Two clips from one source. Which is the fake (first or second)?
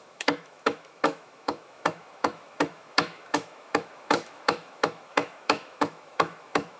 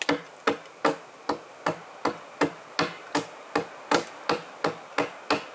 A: first